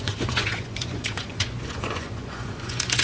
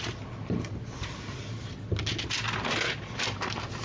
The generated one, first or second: first